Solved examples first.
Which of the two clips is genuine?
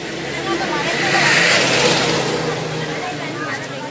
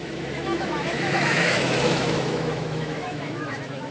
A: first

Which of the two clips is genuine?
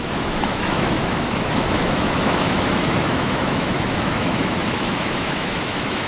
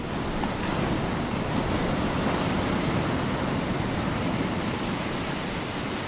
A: second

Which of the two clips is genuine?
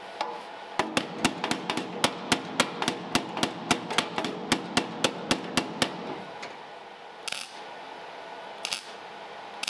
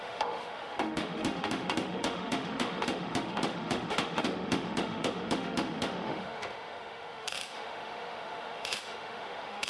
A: first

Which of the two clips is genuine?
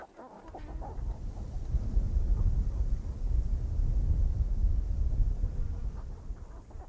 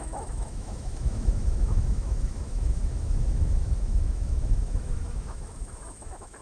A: first